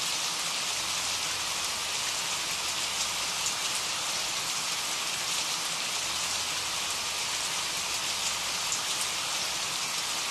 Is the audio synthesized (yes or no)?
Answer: no